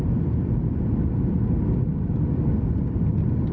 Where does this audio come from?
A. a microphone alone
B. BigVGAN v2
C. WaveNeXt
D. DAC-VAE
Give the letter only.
A